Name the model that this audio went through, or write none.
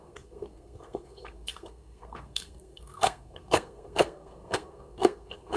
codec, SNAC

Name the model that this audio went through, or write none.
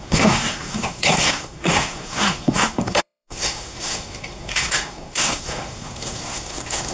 codec, SNAC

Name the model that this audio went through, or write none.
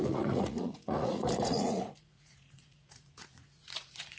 vocoder, Vocos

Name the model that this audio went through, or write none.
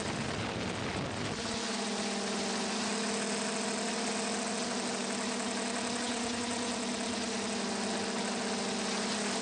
none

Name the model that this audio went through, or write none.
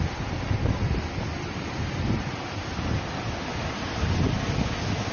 none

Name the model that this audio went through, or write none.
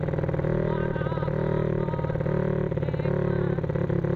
none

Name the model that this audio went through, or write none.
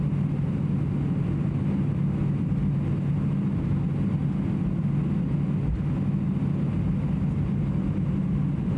none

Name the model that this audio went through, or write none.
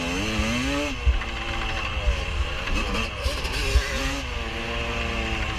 none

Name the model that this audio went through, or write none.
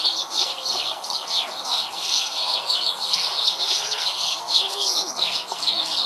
codec, SNAC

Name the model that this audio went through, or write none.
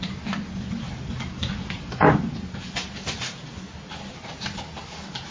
none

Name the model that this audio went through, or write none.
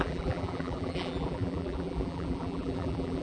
vocoder, BigVGAN v2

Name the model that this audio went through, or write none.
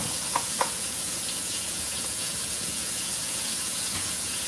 vocoder, Vocos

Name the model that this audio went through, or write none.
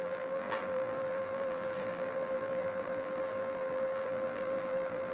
vocoder, BigVGAN v2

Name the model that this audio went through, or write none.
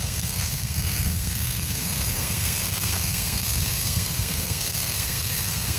codec, SNAC